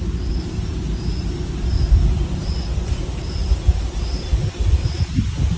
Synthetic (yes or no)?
no